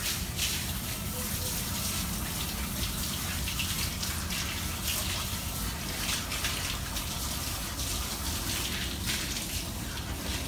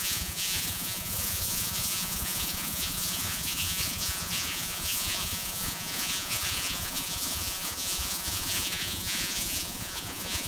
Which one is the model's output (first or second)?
second